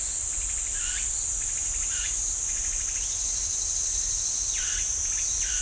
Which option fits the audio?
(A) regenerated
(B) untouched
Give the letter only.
B